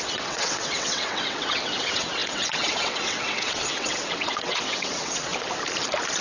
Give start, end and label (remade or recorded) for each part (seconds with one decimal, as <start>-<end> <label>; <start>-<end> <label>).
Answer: 0.0-5.3 remade; 5.3-6.2 recorded